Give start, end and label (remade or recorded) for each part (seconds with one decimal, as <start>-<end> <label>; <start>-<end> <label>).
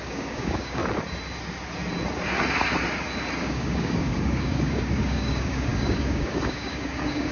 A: 0.0-0.8 remade; 0.8-3.4 recorded; 3.4-7.3 remade